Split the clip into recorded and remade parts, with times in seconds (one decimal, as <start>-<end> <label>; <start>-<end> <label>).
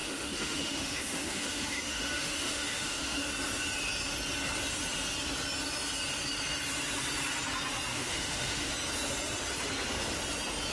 0.0-3.3 remade; 3.3-7.9 recorded; 7.9-8.7 remade; 8.7-10.7 recorded